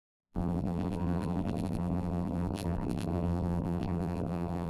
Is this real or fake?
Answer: fake